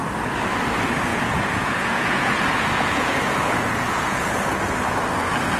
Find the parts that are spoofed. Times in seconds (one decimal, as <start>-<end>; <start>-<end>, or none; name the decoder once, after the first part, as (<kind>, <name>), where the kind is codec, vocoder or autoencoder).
1.1-4.5 (vocoder, Vocos)